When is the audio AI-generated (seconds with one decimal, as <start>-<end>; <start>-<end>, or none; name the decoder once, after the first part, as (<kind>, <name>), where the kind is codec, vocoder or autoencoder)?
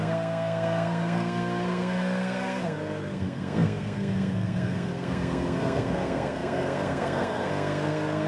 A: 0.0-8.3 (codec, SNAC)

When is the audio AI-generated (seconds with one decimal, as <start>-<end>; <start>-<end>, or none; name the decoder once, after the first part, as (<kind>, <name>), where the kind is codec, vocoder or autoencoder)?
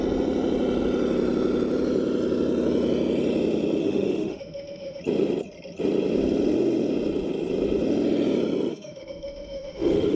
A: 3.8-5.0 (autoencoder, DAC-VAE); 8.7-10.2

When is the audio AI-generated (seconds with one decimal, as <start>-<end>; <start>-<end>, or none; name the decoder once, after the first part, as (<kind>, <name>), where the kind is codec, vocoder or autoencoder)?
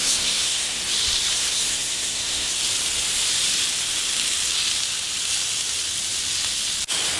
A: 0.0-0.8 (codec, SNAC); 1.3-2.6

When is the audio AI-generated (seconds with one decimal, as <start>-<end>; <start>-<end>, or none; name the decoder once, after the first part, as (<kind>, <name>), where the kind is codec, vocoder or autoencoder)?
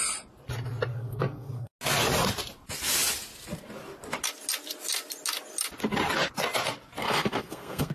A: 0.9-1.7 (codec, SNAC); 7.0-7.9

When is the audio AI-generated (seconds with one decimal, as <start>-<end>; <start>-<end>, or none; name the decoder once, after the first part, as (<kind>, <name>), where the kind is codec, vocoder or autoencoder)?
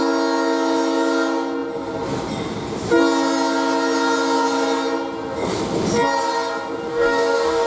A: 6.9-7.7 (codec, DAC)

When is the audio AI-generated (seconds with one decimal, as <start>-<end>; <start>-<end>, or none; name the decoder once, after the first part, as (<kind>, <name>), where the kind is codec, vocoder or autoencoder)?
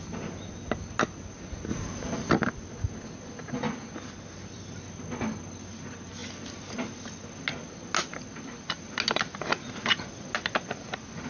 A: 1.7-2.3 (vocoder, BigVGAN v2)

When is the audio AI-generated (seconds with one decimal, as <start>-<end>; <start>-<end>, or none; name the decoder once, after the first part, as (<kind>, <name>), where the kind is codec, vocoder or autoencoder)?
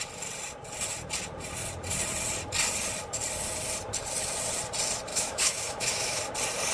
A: 5.1-6.2 (autoencoder, DAC-VAE)